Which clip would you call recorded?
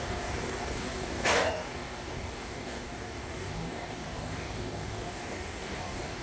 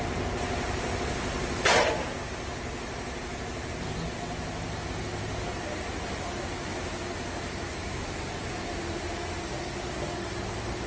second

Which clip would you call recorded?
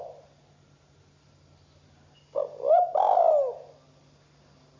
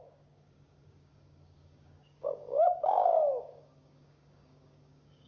first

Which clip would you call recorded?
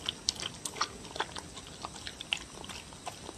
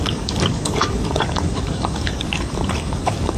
first